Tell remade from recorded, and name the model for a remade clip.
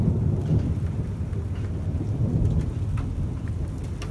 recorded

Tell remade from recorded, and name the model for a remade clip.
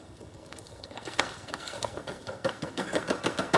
remade, codec, SNAC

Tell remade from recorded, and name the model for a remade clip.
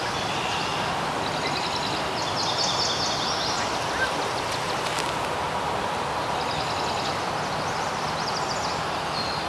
recorded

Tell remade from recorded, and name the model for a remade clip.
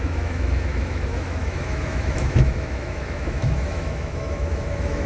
remade, autoencoder, DAC-VAE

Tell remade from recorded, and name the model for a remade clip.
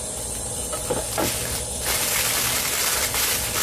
recorded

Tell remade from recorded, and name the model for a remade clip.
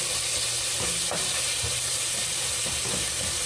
remade, vocoder, BigVGAN v2